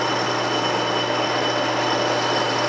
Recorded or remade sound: recorded